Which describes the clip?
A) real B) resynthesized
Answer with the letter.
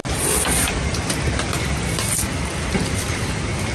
A